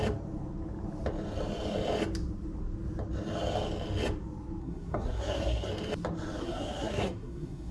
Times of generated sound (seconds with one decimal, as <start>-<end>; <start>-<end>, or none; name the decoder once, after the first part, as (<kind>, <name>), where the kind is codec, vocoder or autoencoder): 4.6-5.7 (codec, SNAC); 6.4-7.7

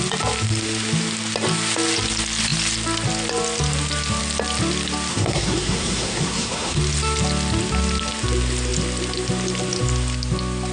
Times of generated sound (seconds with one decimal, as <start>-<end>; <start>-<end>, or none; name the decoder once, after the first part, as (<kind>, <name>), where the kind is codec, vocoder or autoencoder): 5.1-6.8 (codec, SNAC)

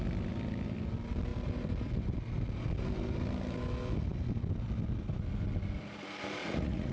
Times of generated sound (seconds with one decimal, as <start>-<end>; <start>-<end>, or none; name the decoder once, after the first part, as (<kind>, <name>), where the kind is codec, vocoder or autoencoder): 6.4-6.9 (vocoder, Vocos)

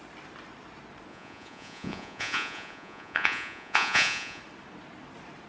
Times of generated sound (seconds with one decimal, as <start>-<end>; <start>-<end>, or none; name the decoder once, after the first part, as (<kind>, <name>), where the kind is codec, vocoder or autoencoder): 1.1-4.4 (vocoder, Vocos)

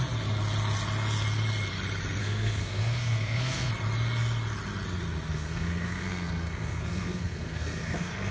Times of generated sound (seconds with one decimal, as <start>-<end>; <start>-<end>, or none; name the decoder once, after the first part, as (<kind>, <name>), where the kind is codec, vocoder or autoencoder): 2.2-3.7 (codec, SNAC); 5.3-8.3